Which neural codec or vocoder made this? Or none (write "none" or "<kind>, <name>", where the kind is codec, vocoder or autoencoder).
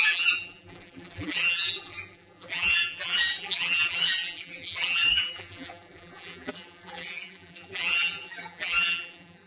vocoder, BigVGAN v2